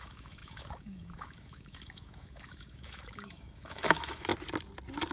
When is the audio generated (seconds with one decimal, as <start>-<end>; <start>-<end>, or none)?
0.0-4.3